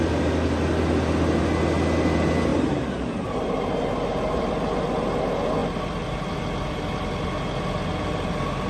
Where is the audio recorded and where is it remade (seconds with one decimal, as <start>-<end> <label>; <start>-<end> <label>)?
0.0-2.5 recorded; 2.5-3.7 remade; 3.7-8.7 recorded